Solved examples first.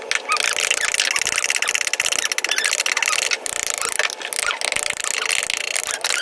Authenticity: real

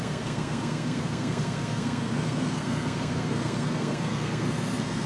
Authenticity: fake